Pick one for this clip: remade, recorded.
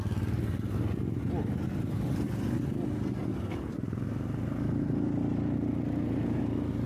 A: recorded